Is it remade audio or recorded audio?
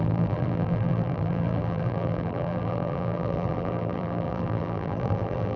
remade